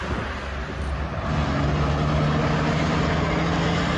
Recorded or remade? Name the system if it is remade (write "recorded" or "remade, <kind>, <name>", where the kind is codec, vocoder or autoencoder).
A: recorded